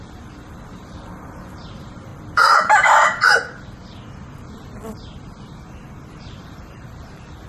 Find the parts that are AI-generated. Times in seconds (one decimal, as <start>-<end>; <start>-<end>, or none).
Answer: 0.0-2.1; 6.1-7.5